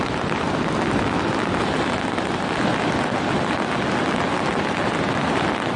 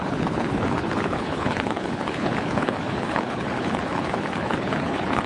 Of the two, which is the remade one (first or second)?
second